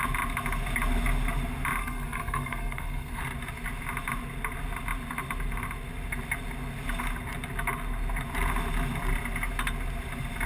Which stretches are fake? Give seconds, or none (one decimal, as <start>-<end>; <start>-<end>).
1.8-3.2